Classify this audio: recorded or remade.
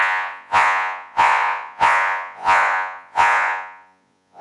remade